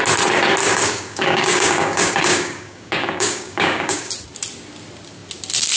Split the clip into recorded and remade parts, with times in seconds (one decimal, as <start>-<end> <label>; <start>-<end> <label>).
0.0-0.6 recorded; 0.6-4.1 remade; 4.1-5.8 recorded